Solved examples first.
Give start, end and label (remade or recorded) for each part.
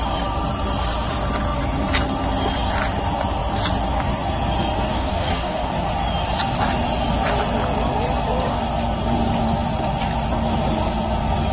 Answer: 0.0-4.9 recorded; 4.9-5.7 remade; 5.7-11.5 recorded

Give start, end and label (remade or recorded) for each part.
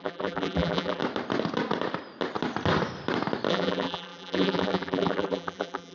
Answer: 0.0-1.0 remade; 1.0-3.5 recorded; 3.5-5.9 remade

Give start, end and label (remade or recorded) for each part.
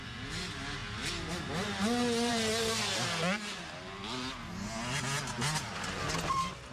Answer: 0.0-6.7 recorded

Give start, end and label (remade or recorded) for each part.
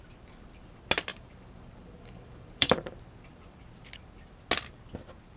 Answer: 0.0-1.1 recorded; 1.1-2.9 remade; 2.9-5.4 recorded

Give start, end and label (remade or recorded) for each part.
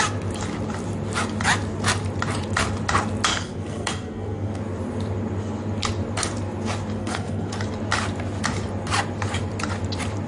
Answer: 0.0-3.3 recorded; 3.3-4.6 remade; 4.6-7.0 recorded; 7.0-7.5 remade; 7.5-10.3 recorded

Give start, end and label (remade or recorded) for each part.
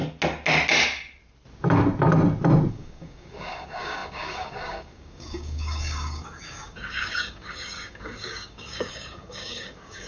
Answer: 0.0-2.7 recorded; 2.7-10.1 remade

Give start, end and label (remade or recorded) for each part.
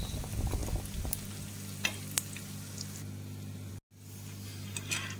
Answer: 0.0-5.2 recorded